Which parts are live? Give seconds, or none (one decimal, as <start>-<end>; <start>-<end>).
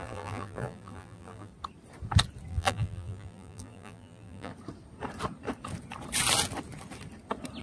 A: 1.5-2.5; 4.5-7.6